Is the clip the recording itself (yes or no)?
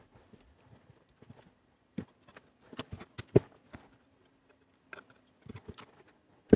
yes